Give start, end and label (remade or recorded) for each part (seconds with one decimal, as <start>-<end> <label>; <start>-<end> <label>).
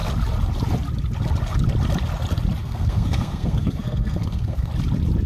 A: 0.0-2.6 recorded; 2.6-4.7 remade; 4.7-5.3 recorded